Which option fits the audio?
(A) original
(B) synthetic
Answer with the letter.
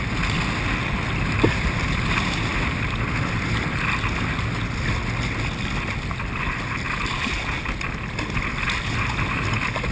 A